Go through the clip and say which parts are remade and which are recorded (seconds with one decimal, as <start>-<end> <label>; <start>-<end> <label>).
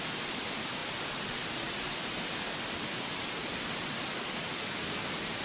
0.0-5.4 recorded